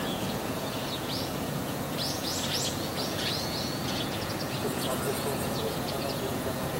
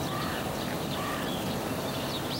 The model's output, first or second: first